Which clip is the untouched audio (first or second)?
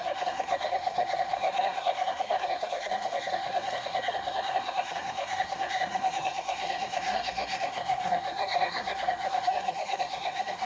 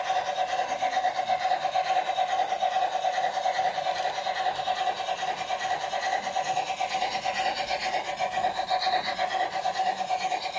second